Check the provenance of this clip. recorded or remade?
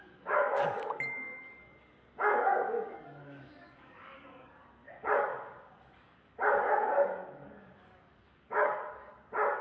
remade